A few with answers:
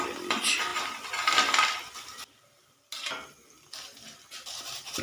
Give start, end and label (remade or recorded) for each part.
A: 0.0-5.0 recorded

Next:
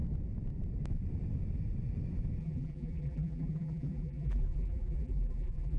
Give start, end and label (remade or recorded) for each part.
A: 0.0-2.4 recorded; 2.4-5.8 remade

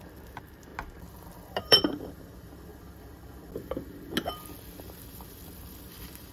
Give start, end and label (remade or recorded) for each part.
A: 0.0-0.7 remade; 0.7-1.6 recorded; 1.6-2.7 remade; 2.7-4.8 recorded; 4.8-6.3 remade

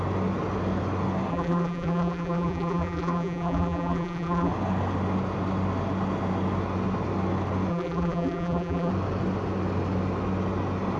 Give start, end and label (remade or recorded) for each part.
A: 0.0-1.3 recorded; 1.3-4.5 remade; 4.5-7.7 recorded; 7.7-8.9 remade; 8.9-11.0 recorded

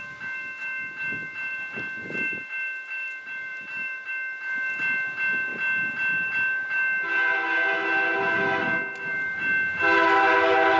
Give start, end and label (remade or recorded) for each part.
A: 0.0-3.5 recorded; 3.5-4.1 remade; 4.1-10.8 recorded

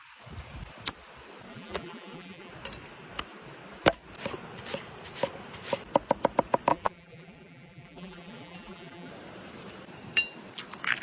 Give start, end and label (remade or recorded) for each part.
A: 0.0-1.5 recorded; 1.5-2.5 remade; 2.5-6.7 recorded; 6.7-9.1 remade; 9.1-11.0 recorded

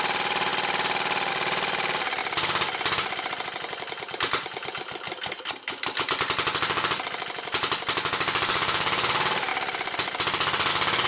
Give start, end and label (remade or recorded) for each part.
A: 0.0-0.5 remade; 0.5-1.3 recorded; 1.3-2.2 remade; 2.2-5.7 recorded; 5.7-11.1 remade

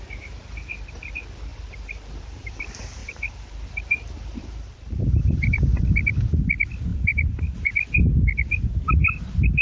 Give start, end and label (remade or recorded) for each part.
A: 0.0-1.5 recorded; 1.5-2.6 remade; 2.6-3.0 recorded; 3.0-5.8 remade; 5.8-6.9 recorded; 6.9-7.8 remade; 7.8-9.6 recorded